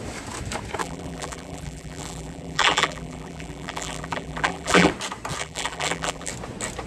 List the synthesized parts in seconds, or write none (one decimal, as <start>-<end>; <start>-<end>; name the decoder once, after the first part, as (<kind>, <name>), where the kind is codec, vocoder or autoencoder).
0.8-4.9 (vocoder, BigVGAN v2); 5.4-6.3